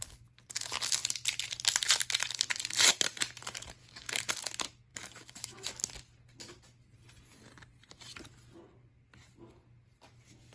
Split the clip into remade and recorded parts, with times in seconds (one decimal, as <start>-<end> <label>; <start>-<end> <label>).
0.0-3.8 recorded; 3.8-4.3 remade; 4.3-4.9 recorded; 4.9-5.7 remade; 5.7-10.5 recorded